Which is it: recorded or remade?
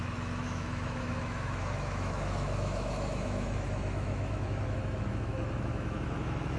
remade